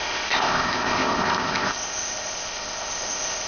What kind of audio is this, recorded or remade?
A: remade